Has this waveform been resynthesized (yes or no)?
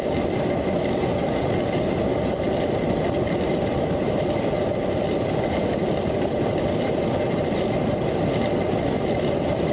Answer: yes